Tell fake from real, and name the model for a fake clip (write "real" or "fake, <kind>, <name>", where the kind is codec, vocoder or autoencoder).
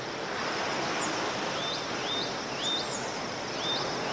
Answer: real